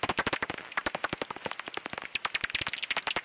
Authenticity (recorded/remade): recorded